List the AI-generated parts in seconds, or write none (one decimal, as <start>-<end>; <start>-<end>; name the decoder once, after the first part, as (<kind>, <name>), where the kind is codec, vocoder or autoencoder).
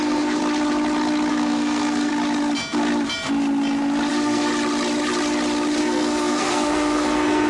0.0-0.4 (codec, SNAC); 1.3-2.1; 4.1-4.5; 5.8-7.5